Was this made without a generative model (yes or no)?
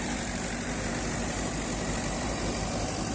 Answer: no